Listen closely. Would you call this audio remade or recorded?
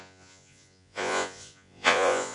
remade